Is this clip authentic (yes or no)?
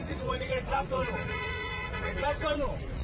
no